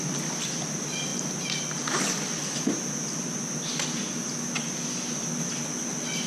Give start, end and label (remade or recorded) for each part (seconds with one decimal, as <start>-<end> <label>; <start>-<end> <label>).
0.0-6.3 recorded